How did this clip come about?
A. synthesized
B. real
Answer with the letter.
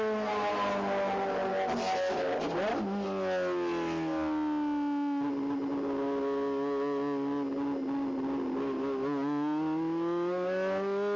B